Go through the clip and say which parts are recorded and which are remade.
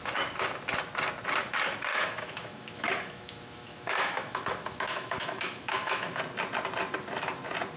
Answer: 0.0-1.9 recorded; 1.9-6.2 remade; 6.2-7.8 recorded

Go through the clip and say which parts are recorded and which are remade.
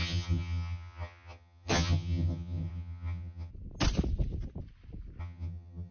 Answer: 0.0-3.5 remade; 3.5-5.2 recorded; 5.2-5.9 remade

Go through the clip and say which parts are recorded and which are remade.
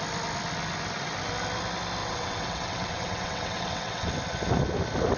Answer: 0.0-2.0 recorded; 2.0-4.1 remade; 4.1-5.2 recorded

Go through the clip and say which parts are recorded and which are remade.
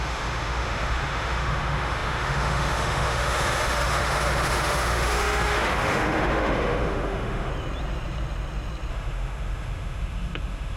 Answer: 0.0-7.5 remade; 7.5-8.9 recorded; 8.9-10.8 remade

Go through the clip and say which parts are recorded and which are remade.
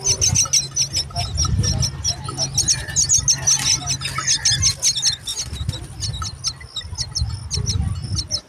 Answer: 0.0-8.5 recorded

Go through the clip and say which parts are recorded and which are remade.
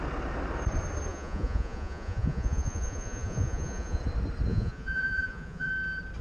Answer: 0.0-1.1 recorded; 1.1-4.0 remade; 4.0-4.5 recorded; 4.5-5.7 remade; 5.7-6.2 recorded